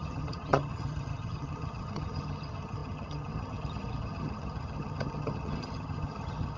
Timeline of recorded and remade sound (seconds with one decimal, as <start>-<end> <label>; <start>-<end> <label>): 0.0-6.6 remade